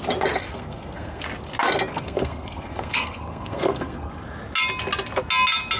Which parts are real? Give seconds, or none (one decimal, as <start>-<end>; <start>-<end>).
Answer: 0.0-0.5; 1.2-1.9; 4.1-5.8